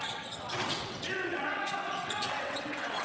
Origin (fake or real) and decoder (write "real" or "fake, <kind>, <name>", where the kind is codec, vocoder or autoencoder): fake, vocoder, WaveNeXt